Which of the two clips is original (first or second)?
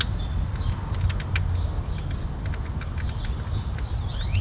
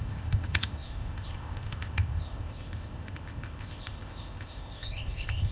first